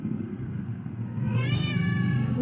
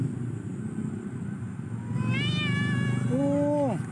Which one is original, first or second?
second